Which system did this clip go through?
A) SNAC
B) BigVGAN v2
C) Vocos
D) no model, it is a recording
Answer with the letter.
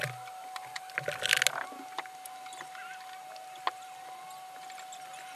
D